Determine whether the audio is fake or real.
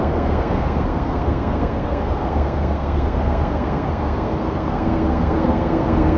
fake